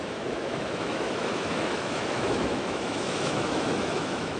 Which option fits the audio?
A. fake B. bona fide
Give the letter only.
A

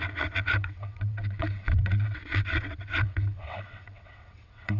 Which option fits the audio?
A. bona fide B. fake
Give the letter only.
B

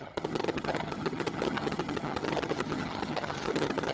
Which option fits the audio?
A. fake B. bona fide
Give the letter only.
A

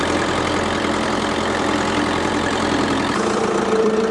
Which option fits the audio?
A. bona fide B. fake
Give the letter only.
B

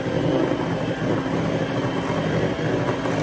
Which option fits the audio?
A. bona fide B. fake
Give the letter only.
A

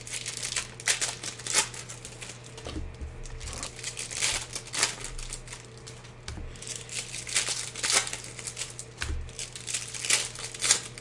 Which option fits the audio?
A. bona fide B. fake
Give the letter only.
A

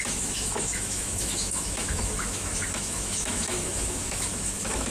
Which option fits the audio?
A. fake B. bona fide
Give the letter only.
A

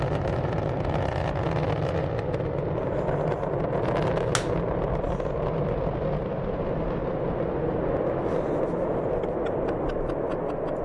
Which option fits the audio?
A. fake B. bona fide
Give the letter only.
B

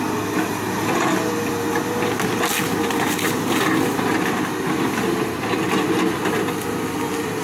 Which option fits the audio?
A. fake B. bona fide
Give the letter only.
B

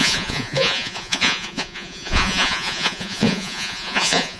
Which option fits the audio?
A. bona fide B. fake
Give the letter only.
B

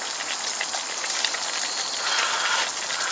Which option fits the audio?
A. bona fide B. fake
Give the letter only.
A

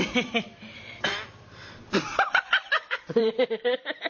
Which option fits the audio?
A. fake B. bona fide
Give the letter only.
A